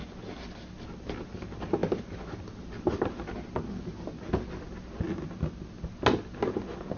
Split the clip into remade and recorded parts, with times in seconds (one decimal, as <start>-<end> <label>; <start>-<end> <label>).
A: 0.0-7.0 recorded